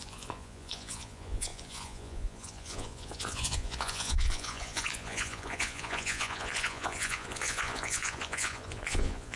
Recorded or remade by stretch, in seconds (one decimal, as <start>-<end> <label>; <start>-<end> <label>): 0.0-9.4 remade